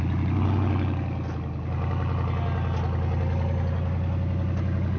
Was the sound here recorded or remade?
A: recorded